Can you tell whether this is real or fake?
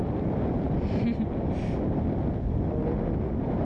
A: real